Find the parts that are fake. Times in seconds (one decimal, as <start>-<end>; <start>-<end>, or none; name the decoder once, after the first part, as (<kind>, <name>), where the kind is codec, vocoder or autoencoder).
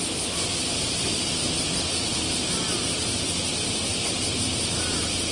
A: 3.9-5.3 (vocoder, BigVGAN v2)